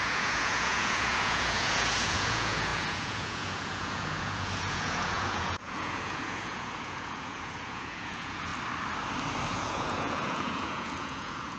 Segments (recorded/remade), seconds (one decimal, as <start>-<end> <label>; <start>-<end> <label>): 0.0-8.5 remade; 8.5-9.5 recorded; 9.5-11.6 remade